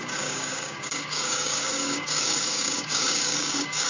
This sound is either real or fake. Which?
fake